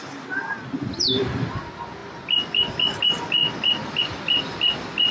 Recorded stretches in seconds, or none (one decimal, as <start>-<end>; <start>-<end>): none